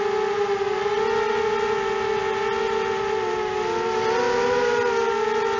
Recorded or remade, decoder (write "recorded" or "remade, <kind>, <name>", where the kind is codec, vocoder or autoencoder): recorded